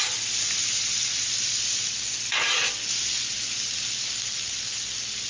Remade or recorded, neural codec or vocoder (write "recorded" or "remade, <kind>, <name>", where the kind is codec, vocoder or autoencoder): recorded